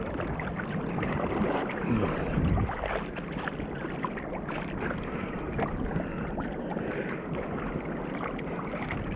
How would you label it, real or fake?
real